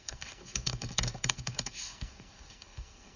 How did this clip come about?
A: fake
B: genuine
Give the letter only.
A